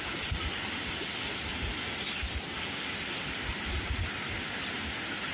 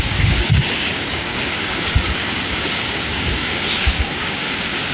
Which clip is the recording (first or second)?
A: first